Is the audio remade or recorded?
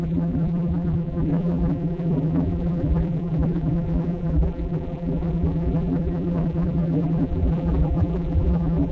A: remade